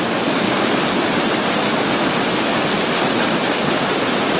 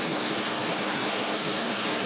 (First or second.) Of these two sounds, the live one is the first